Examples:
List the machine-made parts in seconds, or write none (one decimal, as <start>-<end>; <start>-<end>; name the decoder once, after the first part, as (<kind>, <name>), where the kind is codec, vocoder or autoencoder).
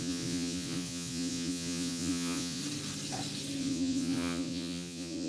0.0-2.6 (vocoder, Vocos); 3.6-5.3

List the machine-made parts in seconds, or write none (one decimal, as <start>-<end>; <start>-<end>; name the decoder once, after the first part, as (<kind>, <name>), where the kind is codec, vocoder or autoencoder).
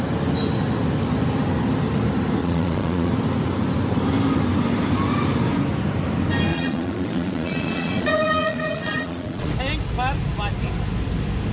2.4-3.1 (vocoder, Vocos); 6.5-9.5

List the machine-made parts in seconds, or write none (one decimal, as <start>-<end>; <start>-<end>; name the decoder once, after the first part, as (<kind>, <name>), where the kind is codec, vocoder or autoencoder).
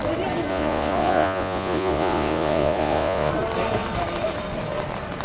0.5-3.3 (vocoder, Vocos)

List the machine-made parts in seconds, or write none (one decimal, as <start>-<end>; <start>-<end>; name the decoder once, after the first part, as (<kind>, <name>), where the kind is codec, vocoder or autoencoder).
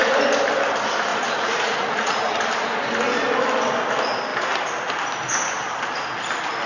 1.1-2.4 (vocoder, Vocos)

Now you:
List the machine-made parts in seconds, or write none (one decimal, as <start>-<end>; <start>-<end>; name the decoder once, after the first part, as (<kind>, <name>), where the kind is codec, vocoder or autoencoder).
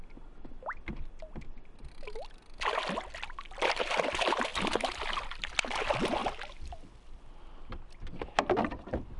none